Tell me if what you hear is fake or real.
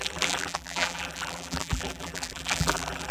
fake